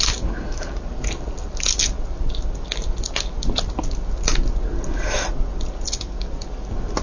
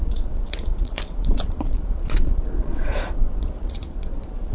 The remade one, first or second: second